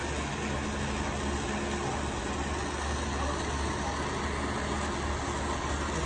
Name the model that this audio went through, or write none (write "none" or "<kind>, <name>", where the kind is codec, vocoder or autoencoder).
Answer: none